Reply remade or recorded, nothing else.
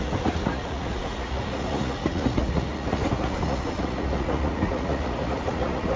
remade